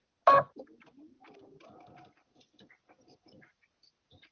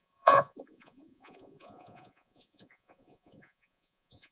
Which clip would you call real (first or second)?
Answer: first